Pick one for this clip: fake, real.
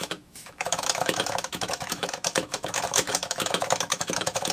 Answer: fake